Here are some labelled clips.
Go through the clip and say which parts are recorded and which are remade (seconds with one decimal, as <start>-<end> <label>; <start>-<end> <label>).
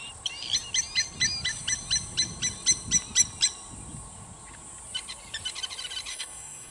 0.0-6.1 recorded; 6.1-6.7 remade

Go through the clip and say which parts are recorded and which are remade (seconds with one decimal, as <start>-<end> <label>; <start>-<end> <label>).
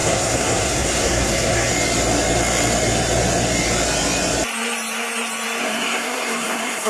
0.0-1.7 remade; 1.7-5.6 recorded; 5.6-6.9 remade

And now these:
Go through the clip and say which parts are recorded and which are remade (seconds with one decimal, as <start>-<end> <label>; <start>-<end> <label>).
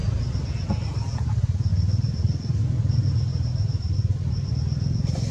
0.0-3.3 recorded; 3.3-4.5 remade; 4.5-5.3 recorded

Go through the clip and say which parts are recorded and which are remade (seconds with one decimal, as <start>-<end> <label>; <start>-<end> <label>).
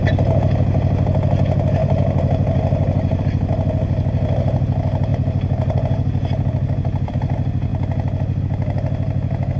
0.0-1.8 recorded; 1.8-3.2 remade; 3.2-5.1 recorded; 5.1-7.1 remade; 7.1-9.6 recorded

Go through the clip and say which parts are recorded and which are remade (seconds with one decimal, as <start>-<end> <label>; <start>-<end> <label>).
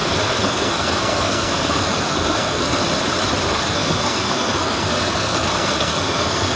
0.0-2.8 remade; 2.8-3.5 recorded; 3.5-6.6 remade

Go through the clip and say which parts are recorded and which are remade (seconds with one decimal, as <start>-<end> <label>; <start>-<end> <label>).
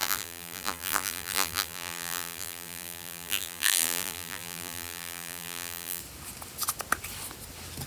0.0-6.0 remade; 6.0-7.9 recorded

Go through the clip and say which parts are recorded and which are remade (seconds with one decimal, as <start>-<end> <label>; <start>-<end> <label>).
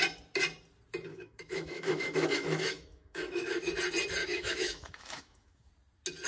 0.0-1.1 recorded; 1.1-3.7 remade; 3.7-4.2 recorded; 4.2-5.7 remade; 5.7-6.3 recorded